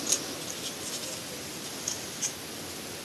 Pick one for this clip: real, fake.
real